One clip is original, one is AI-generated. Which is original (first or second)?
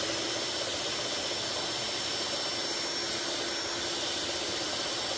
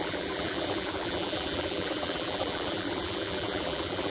first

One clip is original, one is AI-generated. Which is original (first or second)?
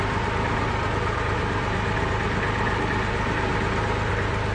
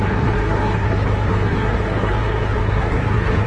first